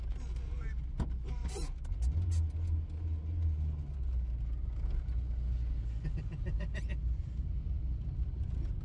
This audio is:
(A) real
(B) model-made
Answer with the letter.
A